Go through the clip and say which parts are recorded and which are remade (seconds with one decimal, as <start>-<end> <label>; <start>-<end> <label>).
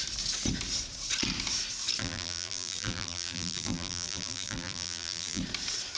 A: 0.0-2.0 recorded; 2.0-5.4 remade; 5.4-6.0 recorded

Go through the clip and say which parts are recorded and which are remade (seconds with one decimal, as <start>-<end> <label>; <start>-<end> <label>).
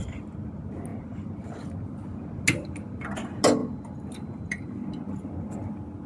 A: 0.0-6.1 recorded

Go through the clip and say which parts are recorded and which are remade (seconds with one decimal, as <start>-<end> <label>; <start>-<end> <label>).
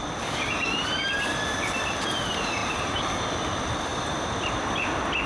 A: 0.0-2.6 remade; 2.6-3.3 recorded; 3.3-3.9 remade; 3.9-4.6 recorded; 4.6-5.3 remade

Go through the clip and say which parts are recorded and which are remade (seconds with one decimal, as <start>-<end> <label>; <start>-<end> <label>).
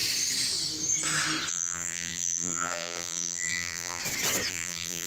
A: 0.0-1.5 recorded; 1.5-4.0 remade; 4.0-4.5 recorded; 4.5-5.1 remade